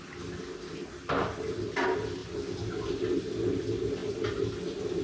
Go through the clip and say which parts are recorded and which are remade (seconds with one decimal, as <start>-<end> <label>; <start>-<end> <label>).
0.0-5.0 recorded